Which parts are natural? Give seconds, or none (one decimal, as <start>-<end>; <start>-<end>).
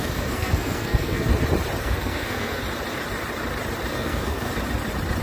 1.3-1.8; 2.6-3.9; 4.5-5.2